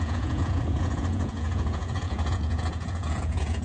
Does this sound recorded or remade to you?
remade